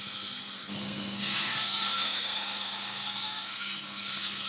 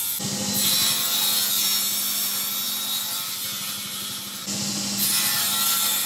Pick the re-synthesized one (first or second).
first